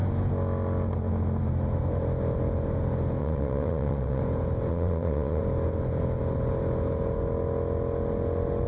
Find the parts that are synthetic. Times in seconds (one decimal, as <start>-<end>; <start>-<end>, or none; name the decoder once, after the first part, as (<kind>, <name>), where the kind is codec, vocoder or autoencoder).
3.2-4.2 (vocoder, Vocos); 4.7-5.4